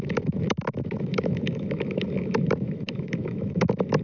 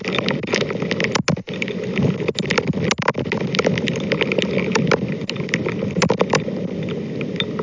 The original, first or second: second